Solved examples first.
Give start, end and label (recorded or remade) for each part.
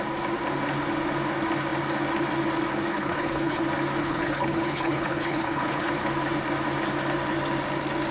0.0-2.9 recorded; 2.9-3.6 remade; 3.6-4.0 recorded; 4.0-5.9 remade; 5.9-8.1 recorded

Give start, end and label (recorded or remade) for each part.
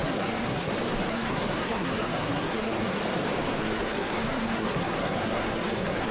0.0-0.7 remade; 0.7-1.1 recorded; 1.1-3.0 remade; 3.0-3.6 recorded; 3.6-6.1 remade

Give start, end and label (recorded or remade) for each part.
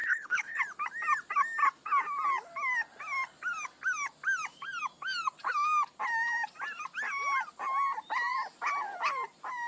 0.0-0.6 remade; 0.6-9.7 recorded